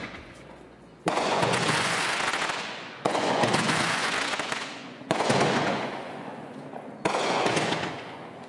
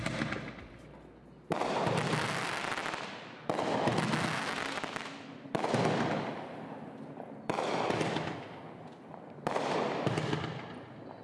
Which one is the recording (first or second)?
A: second